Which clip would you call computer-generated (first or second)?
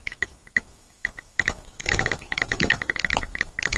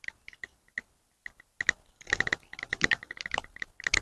first